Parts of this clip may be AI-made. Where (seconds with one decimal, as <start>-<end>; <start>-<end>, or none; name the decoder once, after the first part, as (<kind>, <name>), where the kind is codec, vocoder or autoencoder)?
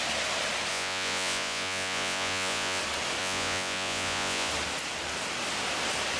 0.7-2.8 (vocoder, Vocos); 3.2-4.5